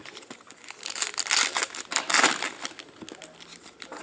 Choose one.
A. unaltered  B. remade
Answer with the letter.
A